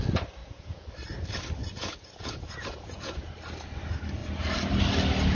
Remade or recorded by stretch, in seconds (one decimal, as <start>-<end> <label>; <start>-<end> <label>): 0.0-0.4 recorded; 0.4-0.9 remade; 0.9-1.8 recorded; 1.8-3.3 remade; 3.3-5.3 recorded